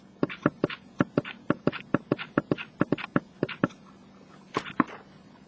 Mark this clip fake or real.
real